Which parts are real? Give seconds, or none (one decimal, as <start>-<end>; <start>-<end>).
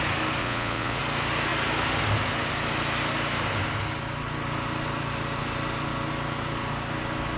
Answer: 0.0-0.4; 1.0-7.4